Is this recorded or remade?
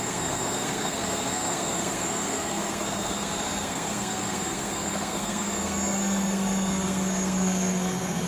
remade